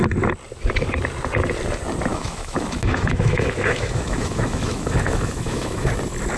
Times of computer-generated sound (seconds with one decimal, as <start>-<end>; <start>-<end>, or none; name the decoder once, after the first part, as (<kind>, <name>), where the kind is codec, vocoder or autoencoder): 2.1-5.9 (autoencoder, DAC-VAE)